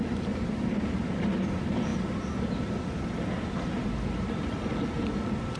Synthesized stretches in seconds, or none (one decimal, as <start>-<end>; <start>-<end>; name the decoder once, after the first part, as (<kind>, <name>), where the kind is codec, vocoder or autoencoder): none

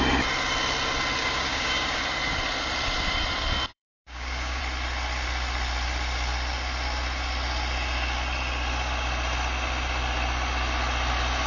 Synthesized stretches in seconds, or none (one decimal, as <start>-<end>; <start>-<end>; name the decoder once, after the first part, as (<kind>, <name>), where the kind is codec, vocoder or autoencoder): 1.2-2.0 (codec, DAC); 3.7-4.6

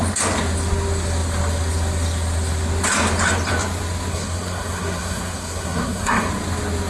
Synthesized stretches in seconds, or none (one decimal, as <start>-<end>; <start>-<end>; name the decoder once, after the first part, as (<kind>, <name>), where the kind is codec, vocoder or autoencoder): 4.1-6.3 (codec, SNAC)

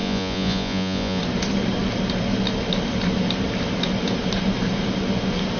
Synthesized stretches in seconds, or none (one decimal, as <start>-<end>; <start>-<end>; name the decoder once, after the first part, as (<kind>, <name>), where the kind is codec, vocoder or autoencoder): 0.0-1.2 (vocoder, Vocos)

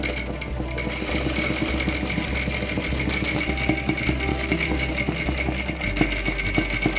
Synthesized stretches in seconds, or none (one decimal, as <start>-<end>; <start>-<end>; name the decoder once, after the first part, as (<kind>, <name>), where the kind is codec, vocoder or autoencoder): 4.3-4.9 (codec, DAC)